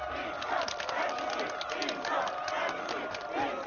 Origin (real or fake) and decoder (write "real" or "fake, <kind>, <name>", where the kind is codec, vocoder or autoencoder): real